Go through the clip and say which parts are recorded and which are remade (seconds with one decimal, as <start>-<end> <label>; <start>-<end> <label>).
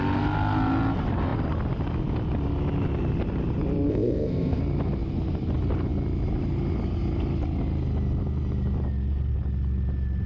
0.0-3.9 recorded; 3.9-4.6 remade; 4.6-10.3 recorded